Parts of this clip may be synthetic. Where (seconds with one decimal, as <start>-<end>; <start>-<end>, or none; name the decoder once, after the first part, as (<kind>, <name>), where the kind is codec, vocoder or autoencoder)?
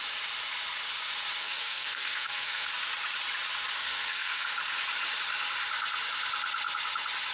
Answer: 1.4-2.7 (codec, SNAC); 3.8-4.5